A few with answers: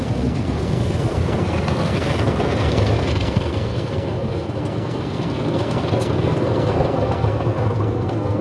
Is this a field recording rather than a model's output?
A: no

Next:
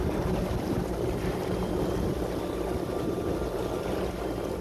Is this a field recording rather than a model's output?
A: yes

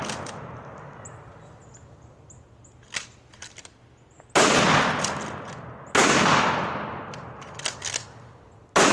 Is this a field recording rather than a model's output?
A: yes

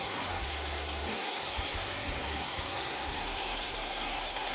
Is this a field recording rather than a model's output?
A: no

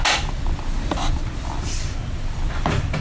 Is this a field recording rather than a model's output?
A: yes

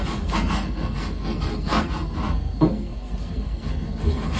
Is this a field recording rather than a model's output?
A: no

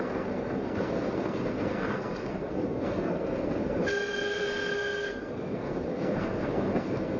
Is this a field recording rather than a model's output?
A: no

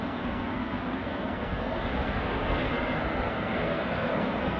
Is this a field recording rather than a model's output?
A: no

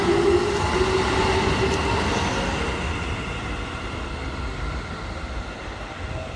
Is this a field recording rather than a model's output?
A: yes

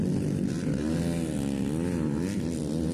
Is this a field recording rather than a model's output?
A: yes